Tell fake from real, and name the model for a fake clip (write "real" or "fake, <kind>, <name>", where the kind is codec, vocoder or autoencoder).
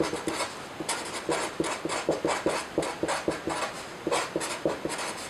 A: real